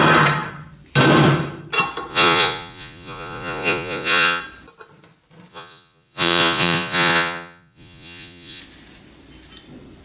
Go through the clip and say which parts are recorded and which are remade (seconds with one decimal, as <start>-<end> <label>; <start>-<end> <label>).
0.0-2.1 recorded; 2.1-4.4 remade; 4.4-5.5 recorded; 5.5-8.6 remade; 8.6-10.0 recorded